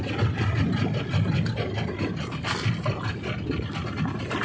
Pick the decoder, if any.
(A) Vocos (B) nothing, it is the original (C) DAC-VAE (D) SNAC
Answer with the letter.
B